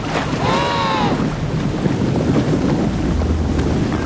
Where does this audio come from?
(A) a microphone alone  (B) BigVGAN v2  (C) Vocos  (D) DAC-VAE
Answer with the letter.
A